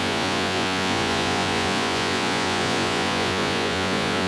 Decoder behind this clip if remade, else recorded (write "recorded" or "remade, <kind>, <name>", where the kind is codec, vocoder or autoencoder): remade, vocoder, Vocos